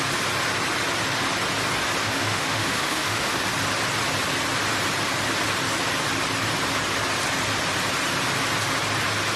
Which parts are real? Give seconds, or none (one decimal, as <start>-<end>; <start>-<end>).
0.0-2.0; 3.4-9.4

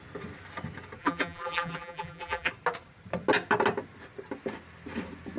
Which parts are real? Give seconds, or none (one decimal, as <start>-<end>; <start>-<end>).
0.0-1.0; 2.5-5.4